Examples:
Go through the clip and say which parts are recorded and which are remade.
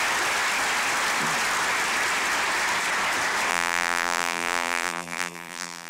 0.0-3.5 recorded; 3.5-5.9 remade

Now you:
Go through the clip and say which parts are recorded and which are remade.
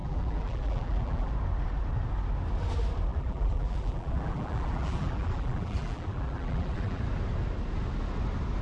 0.0-1.3 remade; 1.3-3.1 recorded; 3.1-7.0 remade; 7.0-8.6 recorded